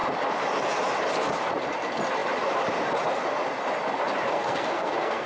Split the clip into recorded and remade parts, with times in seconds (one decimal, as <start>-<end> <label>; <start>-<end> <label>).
0.0-4.3 recorded; 4.3-5.3 remade